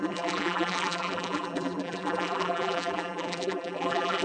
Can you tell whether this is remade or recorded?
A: remade